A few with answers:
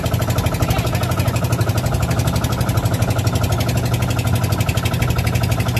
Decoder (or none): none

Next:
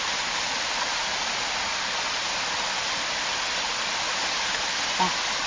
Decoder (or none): none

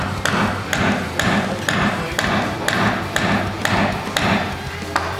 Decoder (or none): none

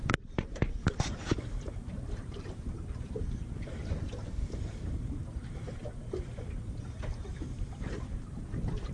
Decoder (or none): vocoder, BigVGAN v2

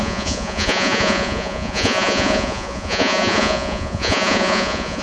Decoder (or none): vocoder, Vocos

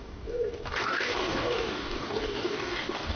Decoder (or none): codec, DAC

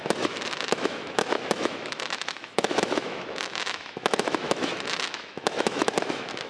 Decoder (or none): autoencoder, DAC-VAE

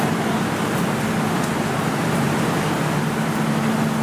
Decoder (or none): none